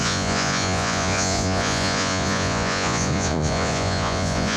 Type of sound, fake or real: fake